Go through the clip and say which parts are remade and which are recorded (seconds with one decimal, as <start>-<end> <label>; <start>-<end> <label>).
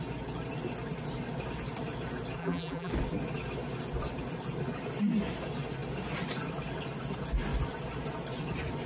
0.0-2.4 recorded; 2.4-2.9 remade; 2.9-8.9 recorded